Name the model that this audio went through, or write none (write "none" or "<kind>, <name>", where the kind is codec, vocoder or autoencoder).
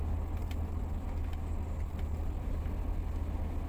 none